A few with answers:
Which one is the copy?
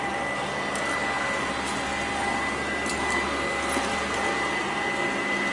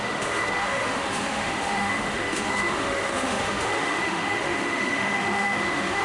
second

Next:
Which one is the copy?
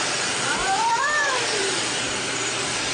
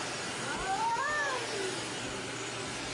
first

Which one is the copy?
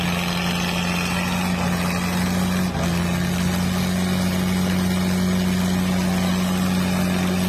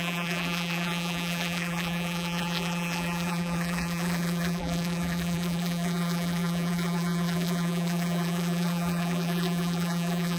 second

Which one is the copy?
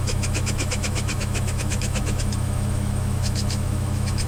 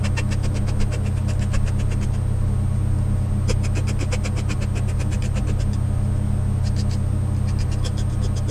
first